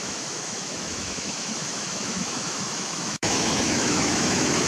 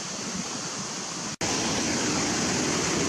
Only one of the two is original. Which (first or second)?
second